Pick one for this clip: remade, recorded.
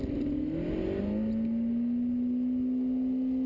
recorded